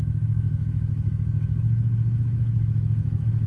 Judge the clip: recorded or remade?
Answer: remade